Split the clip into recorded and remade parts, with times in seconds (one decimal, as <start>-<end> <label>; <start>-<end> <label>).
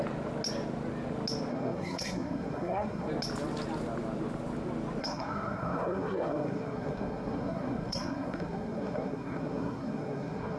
0.0-1.5 recorded; 1.5-3.1 remade; 3.1-5.0 recorded; 5.0-10.6 remade